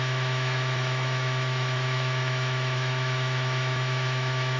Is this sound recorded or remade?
remade